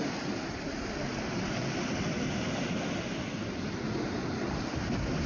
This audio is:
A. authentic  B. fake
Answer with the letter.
A